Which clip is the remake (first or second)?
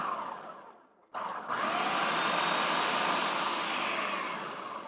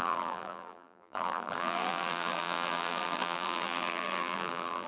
second